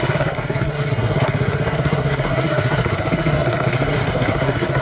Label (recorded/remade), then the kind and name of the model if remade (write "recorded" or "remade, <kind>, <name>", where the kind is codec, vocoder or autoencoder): remade, codec, SNAC